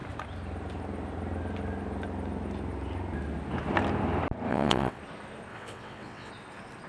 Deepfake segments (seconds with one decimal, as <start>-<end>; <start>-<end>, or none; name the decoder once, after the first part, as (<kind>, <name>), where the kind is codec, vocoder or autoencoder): 4.5-5.0 (vocoder, WaveNeXt); 5.5-6.3